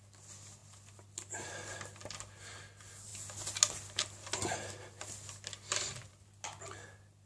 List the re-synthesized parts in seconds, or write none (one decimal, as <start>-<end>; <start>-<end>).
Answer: none